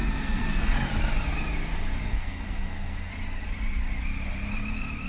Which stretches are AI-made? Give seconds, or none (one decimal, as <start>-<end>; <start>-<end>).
0.0-0.9; 2.1-3.1